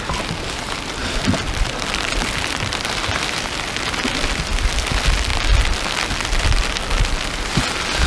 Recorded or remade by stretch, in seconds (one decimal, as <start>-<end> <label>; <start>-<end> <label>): 0.0-1.0 recorded; 1.0-4.7 remade; 4.7-8.1 recorded